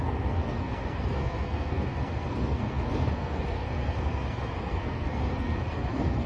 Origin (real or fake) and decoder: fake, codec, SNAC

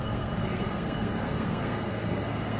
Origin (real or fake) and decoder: fake, codec, SNAC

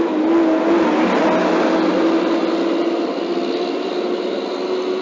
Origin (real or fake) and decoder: real